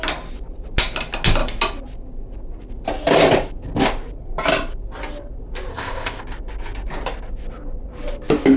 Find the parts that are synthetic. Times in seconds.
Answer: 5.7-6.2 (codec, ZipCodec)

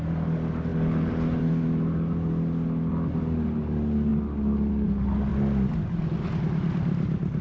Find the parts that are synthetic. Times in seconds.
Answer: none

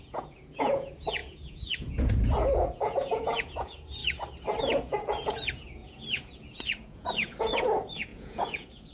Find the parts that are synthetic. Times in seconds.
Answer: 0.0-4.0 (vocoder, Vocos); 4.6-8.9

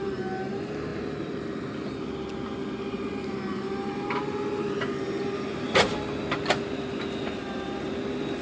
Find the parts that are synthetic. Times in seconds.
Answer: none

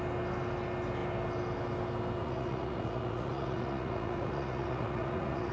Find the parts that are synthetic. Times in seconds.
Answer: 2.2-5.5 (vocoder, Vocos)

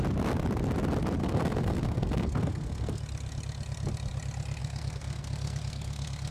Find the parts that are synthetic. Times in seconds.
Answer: 1.2-3.0 (codec, SNAC); 4.6-6.3